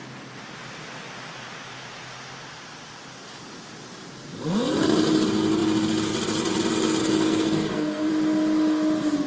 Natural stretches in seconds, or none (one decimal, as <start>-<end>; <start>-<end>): 0.0-7.0; 8.1-9.3